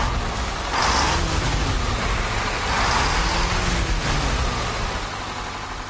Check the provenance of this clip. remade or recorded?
recorded